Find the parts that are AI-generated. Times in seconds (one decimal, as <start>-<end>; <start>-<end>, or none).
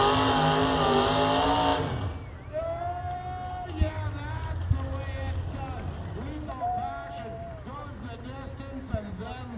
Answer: none